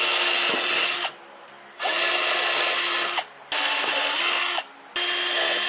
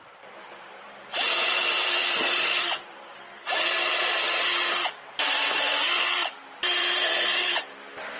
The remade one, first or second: second